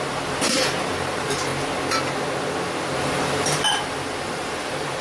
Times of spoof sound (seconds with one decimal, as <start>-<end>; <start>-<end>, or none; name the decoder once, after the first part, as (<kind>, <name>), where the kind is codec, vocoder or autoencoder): 0.0-1.5 (vocoder, BigVGAN v2); 3.0-5.0